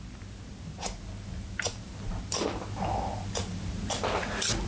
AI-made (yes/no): no